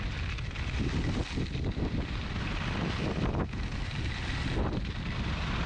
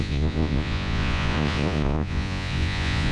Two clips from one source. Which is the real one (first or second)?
first